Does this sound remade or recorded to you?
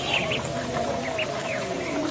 recorded